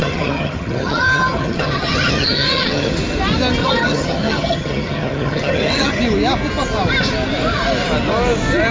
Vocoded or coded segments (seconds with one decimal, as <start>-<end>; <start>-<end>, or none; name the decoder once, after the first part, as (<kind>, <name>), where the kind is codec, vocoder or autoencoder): 0.0-3.0 (vocoder, HiFi-GAN); 3.6-6.0